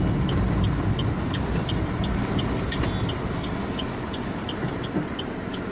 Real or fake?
real